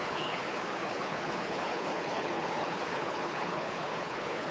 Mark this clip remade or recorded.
remade